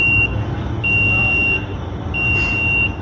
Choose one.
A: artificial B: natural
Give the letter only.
B